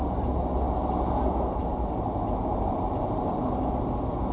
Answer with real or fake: real